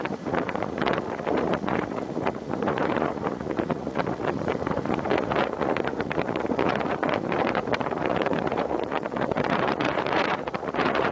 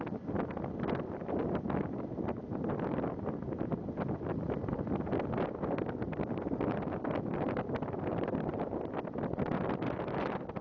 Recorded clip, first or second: second